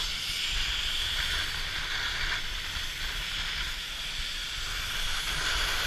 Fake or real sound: real